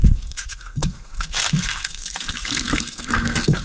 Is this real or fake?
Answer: fake